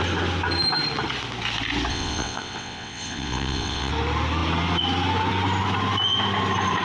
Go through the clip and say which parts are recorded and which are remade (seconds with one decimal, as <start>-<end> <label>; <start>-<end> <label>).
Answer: 0.0-1.9 recorded; 1.9-3.9 remade; 3.9-6.8 recorded